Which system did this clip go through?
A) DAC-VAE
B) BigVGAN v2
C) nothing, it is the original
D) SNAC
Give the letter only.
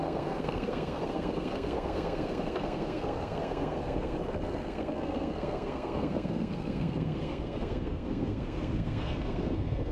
D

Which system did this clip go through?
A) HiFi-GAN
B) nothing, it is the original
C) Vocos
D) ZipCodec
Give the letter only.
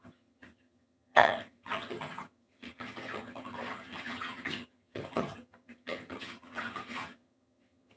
A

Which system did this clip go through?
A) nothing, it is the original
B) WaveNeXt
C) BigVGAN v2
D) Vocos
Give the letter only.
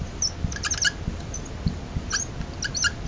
A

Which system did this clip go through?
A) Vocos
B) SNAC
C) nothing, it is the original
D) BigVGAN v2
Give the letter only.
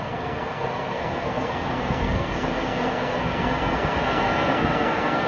B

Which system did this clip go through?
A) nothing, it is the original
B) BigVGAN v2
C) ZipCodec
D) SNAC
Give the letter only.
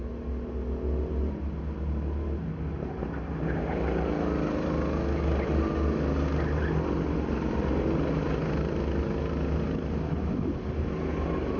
A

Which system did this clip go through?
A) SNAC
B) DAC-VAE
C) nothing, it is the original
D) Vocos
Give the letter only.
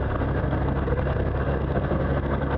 A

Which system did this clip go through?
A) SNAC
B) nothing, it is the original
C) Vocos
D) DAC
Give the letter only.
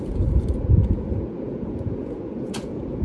C